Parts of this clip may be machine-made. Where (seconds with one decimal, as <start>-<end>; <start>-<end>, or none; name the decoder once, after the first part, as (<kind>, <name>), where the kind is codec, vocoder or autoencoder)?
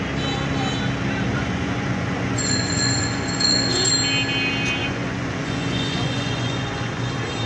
1.3-3.9 (vocoder, Vocos); 4.8-7.1